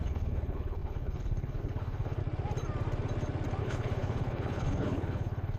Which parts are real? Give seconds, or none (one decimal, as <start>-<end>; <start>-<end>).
2.2-3.6